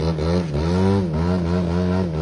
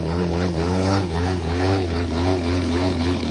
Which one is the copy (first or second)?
second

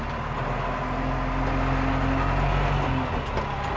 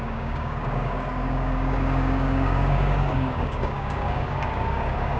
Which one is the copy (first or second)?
second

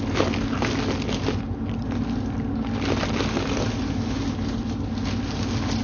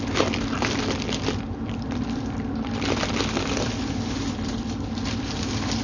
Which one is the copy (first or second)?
second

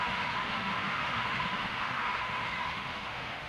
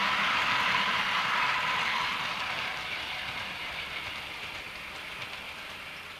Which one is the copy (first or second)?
first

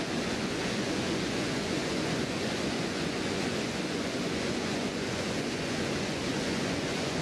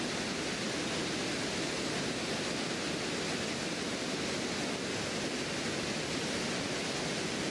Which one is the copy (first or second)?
first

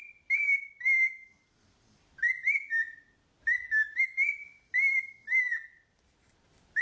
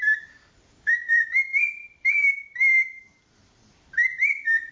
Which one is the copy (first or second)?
second